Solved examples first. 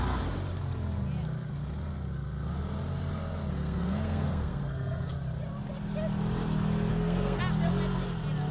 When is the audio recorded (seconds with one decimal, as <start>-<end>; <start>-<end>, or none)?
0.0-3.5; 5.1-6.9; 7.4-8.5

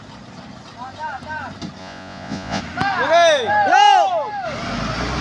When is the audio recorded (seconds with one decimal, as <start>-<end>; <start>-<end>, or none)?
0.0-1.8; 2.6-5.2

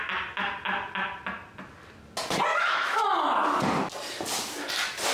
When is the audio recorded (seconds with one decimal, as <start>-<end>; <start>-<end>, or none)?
0.0-2.5; 3.0-5.1